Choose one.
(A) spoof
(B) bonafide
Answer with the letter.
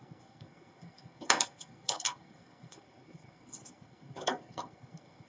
A